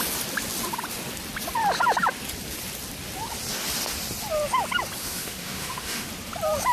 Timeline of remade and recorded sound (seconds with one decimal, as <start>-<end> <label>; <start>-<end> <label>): 0.0-5.0 recorded; 5.0-6.1 remade; 6.1-6.7 recorded